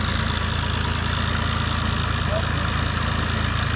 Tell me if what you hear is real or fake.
real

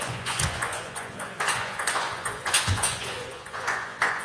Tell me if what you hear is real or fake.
fake